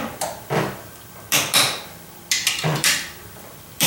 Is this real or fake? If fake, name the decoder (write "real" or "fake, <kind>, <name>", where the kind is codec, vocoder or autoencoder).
fake, vocoder, BigVGAN v2